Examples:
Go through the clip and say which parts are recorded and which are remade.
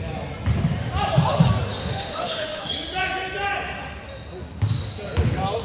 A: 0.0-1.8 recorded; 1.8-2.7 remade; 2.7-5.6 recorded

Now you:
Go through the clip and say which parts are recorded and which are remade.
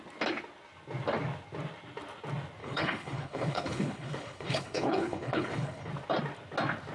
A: 0.0-2.6 recorded; 2.6-5.9 remade; 5.9-6.9 recorded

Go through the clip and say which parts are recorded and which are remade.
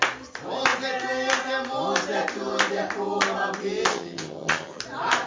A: 0.0-3.9 recorded; 3.9-4.8 remade; 4.8-5.3 recorded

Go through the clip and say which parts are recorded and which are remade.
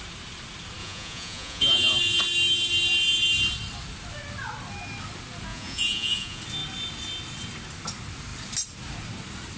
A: 0.0-0.8 recorded; 0.8-2.2 remade; 2.2-5.5 recorded; 5.5-6.4 remade; 6.4-9.6 recorded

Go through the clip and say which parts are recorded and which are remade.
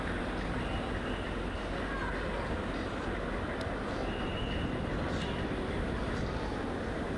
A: 0.0-7.2 recorded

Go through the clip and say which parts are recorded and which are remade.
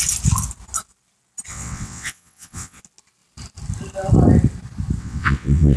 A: 0.0-1.5 recorded; 1.5-2.8 remade; 2.8-5.0 recorded; 5.0-5.8 remade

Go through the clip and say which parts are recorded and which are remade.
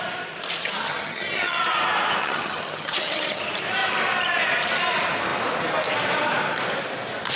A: 0.0-0.6 recorded; 0.6-1.6 remade; 1.6-2.2 recorded; 2.2-3.4 remade; 3.4-7.4 recorded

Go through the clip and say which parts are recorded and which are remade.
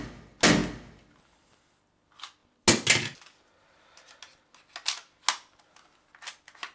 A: 0.0-6.7 recorded